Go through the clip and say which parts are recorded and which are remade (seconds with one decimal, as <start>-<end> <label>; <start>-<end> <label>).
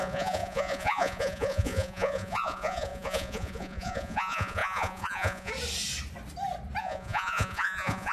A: 0.0-5.5 remade; 5.5-6.8 recorded; 6.8-8.1 remade